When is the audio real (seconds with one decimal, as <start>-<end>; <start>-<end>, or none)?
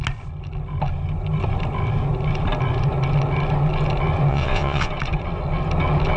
0.0-4.3; 4.9-6.2